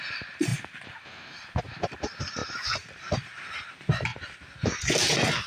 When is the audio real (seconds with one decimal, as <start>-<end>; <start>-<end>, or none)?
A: 0.0-5.5